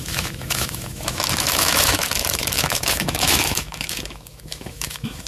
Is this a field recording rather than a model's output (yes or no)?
no